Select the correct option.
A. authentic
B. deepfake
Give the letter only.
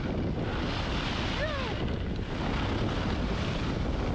A